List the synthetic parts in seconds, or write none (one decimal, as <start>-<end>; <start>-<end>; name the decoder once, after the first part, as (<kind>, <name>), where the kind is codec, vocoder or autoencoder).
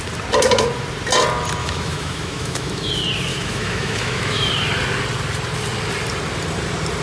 1.6-2.9 (autoencoder, DAC-VAE); 3.3-4.5